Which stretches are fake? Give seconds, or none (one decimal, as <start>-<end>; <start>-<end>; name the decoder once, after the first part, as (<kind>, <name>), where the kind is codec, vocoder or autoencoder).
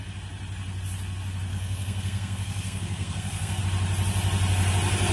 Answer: 1.5-3.6 (codec, SNAC)